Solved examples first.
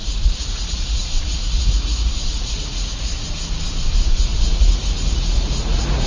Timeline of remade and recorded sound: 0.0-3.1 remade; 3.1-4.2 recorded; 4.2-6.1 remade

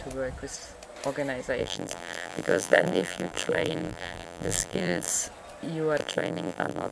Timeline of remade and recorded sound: 0.0-1.6 recorded; 1.6-5.1 remade; 5.1-6.0 recorded; 6.0-6.9 remade

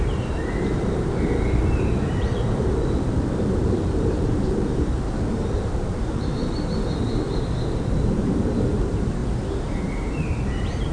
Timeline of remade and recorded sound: 0.0-6.4 remade; 6.4-7.6 recorded; 7.6-9.2 remade; 9.2-9.8 recorded; 9.8-10.9 remade